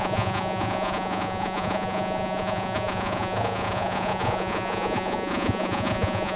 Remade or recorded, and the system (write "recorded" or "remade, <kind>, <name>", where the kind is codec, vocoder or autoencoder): remade, vocoder, Vocos